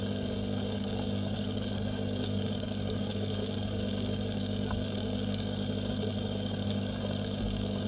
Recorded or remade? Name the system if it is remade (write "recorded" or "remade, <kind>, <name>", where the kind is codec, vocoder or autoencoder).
remade, codec, DAC